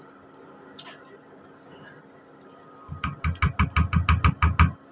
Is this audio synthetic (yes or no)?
no